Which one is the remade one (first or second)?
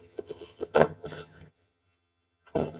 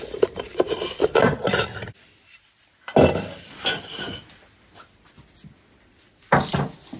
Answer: first